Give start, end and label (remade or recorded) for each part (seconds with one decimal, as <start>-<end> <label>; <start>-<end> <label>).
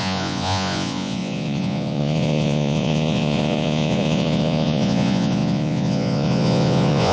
0.0-7.1 remade